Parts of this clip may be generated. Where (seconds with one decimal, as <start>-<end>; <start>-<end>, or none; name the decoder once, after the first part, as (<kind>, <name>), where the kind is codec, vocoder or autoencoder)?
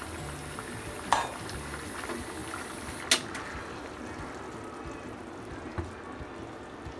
none